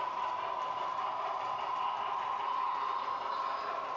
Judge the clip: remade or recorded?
recorded